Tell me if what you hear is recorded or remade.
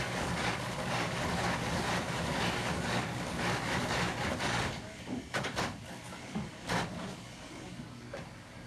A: remade